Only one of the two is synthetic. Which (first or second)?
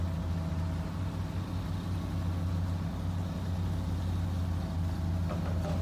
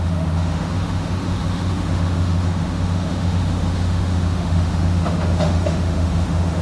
second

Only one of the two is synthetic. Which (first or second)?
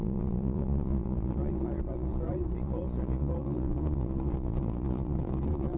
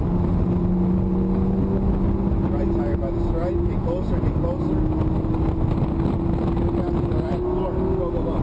first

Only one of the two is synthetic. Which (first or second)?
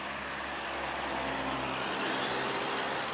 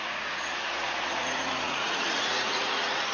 second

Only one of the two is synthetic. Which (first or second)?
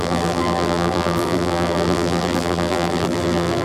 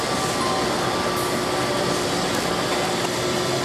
first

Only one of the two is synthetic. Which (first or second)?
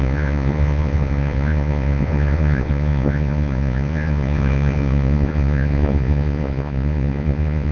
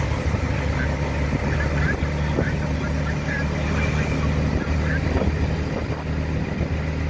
first